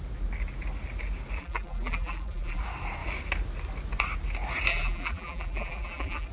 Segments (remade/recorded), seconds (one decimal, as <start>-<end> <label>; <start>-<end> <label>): 0.0-1.4 recorded; 1.4-2.6 remade; 2.6-4.7 recorded; 4.7-6.3 remade